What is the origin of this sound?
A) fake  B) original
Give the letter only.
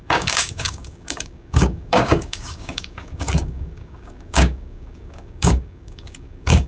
A